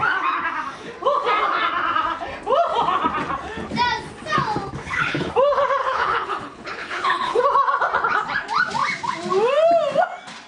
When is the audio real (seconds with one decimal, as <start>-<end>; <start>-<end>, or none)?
0.0-4.8; 5.3-5.8; 7.4-10.5